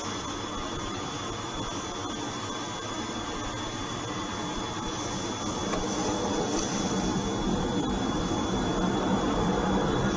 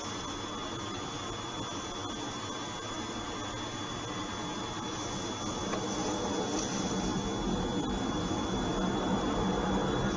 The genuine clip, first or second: second